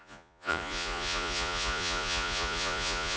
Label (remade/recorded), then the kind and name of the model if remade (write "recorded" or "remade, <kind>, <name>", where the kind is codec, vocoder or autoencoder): remade, vocoder, Vocos